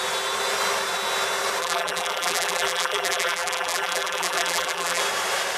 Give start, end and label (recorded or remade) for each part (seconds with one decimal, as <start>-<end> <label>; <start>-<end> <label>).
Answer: 0.0-1.6 recorded; 1.6-5.0 remade; 5.0-5.6 recorded